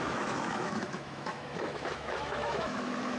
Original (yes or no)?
no